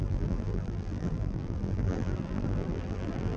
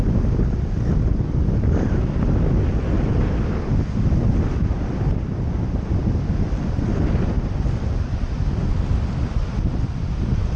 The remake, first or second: first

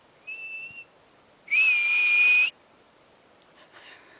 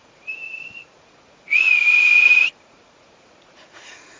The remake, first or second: second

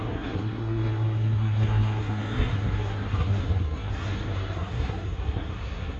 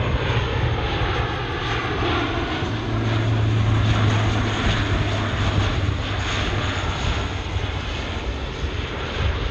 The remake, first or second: first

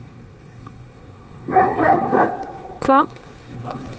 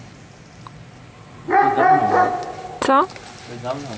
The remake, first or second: first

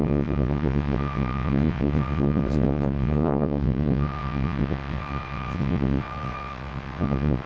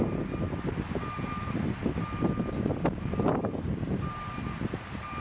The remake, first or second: first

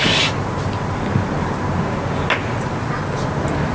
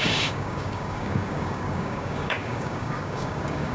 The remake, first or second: second